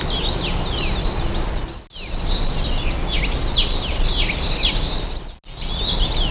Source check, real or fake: real